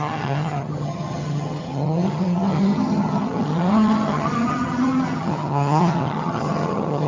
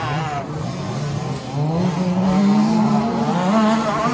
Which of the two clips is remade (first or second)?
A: first